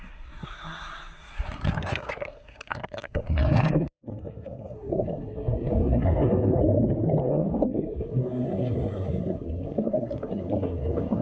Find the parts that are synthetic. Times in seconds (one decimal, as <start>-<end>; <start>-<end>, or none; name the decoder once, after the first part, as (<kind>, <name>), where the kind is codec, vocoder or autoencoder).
0.0-6.6 (codec, SNAC); 7.2-11.2